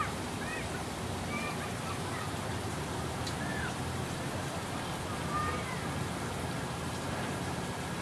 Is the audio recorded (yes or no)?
no